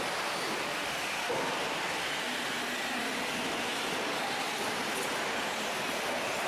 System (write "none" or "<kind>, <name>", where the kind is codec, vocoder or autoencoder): none